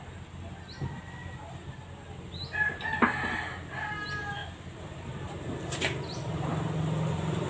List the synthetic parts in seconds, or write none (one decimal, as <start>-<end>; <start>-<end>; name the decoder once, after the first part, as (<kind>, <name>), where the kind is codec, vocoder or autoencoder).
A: none